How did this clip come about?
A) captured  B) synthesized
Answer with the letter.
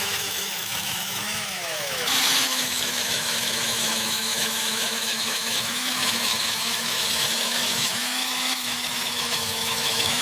B